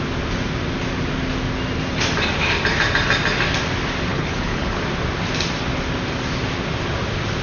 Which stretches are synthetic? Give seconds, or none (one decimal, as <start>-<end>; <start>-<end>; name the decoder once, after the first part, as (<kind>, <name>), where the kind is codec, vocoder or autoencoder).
4.1-4.8 (codec, HILCodec)